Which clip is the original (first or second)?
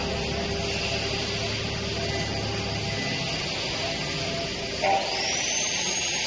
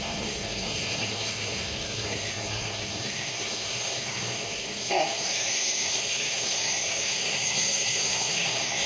first